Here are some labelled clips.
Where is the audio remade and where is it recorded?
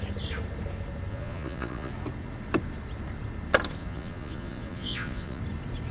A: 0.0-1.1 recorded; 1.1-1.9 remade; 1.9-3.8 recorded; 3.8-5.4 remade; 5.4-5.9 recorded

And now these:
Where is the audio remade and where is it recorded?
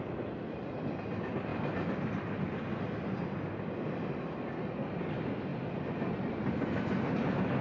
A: 0.0-7.6 recorded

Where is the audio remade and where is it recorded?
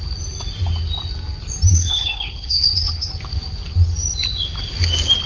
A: 0.0-1.7 recorded; 1.7-3.1 remade; 3.1-5.3 recorded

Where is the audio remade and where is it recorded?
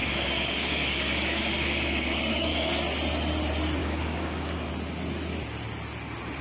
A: 0.0-2.7 remade; 2.7-3.8 recorded; 3.8-4.7 remade; 4.7-6.4 recorded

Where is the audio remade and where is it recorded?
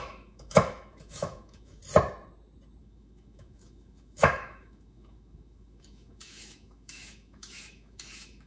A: 0.0-1.8 remade; 1.8-2.8 recorded; 2.8-8.5 remade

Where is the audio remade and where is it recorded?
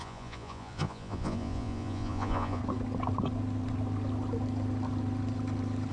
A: 0.0-2.6 remade; 2.6-5.9 recorded